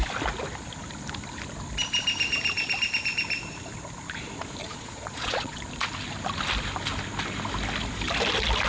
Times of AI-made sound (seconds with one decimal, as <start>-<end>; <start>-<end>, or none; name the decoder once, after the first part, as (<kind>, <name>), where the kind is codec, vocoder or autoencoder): 4.6-5.6 (vocoder, Vocos)